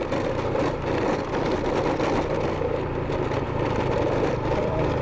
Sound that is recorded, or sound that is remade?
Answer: recorded